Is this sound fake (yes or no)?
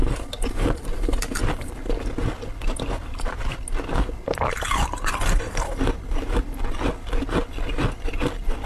no